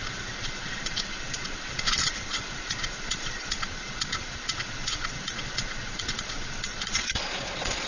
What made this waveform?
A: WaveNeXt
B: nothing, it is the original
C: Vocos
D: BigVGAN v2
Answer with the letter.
C